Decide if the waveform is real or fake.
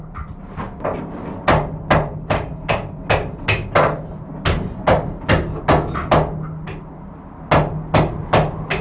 real